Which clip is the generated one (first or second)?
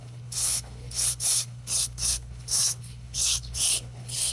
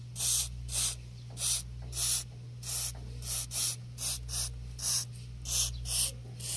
first